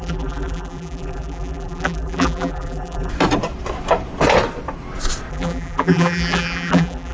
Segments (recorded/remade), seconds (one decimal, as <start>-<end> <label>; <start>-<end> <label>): 0.0-3.1 remade; 3.1-5.3 recorded; 5.3-7.1 remade